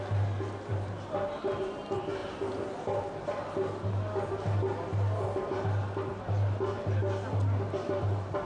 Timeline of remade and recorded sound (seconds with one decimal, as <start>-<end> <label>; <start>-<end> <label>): 0.0-8.5 recorded